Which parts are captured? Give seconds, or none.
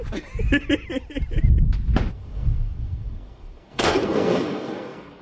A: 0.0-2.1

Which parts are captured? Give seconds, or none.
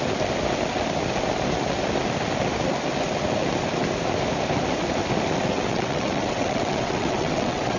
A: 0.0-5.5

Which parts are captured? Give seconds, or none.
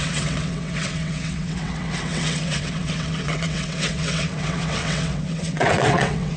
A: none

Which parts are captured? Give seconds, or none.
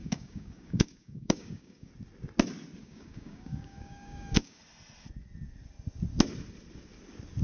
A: 1.9-2.8; 4.6-7.4